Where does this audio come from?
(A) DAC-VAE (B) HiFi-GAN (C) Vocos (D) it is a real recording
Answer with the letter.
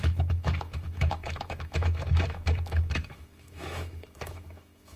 A